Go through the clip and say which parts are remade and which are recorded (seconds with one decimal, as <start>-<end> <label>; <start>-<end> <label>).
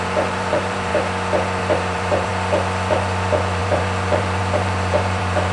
0.0-0.9 remade; 0.9-1.6 recorded; 1.6-2.3 remade; 2.3-2.9 recorded; 2.9-5.5 remade